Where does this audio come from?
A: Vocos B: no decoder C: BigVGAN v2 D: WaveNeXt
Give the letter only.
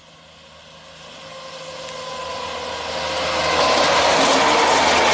B